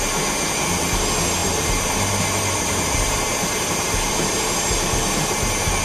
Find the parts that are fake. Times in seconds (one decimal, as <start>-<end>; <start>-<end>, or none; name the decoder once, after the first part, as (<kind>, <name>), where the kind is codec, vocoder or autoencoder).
1.4-4.9 (vocoder, BigVGAN v2)